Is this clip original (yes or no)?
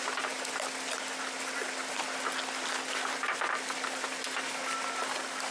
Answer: yes